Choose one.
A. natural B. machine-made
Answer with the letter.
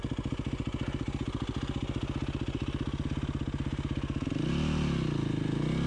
A